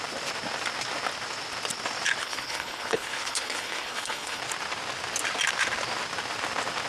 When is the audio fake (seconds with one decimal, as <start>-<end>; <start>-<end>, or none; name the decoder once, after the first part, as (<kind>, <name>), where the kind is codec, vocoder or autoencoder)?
2.2-4.4 (codec, HILCodec)